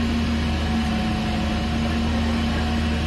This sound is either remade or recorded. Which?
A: recorded